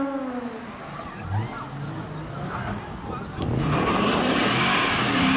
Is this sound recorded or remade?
recorded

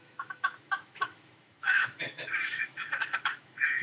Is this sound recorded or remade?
remade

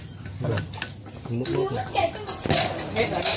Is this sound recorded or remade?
recorded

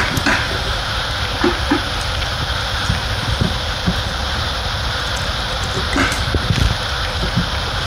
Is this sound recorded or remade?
recorded